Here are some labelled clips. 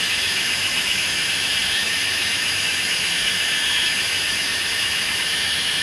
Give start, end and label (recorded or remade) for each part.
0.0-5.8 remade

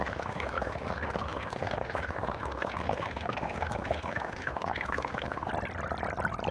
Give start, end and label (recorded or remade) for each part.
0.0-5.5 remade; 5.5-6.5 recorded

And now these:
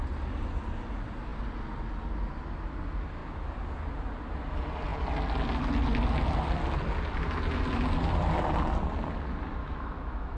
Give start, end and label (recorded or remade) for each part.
0.0-9.6 recorded; 9.6-10.4 remade